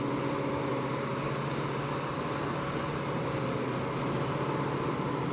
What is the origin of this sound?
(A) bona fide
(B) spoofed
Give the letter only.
A